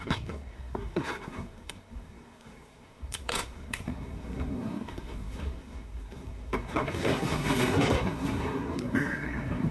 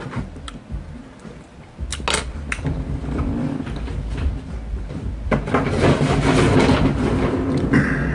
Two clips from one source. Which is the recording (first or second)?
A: second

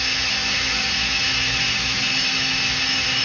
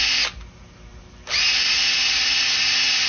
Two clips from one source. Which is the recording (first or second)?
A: second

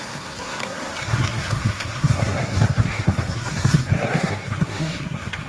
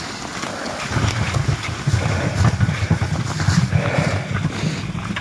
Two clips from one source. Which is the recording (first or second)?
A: second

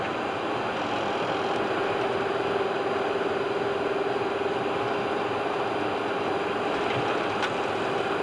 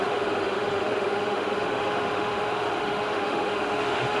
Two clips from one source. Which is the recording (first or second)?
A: first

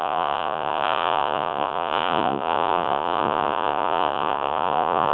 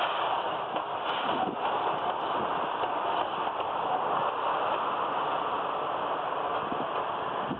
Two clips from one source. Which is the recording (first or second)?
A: second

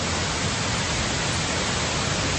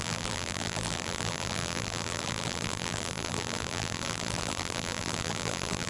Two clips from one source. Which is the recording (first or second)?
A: first